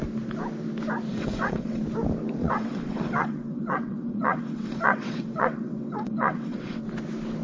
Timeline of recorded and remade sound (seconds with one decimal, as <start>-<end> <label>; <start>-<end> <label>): 0.0-1.1 recorded; 1.1-1.8 remade; 1.8-2.4 recorded; 2.4-6.8 remade; 6.8-7.4 recorded